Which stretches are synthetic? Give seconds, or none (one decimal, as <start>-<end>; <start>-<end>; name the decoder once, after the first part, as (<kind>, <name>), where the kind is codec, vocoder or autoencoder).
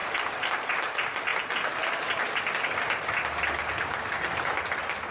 none